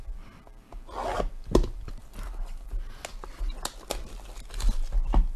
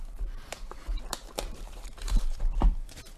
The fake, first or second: second